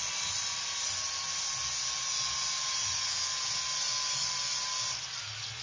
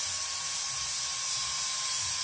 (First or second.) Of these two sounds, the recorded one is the first